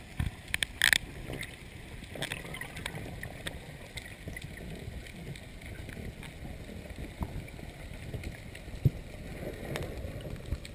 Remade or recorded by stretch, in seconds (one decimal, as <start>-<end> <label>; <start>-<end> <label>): 0.0-10.7 recorded